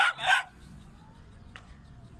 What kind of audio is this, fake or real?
fake